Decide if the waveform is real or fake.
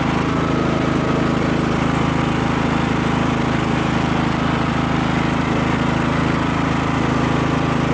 real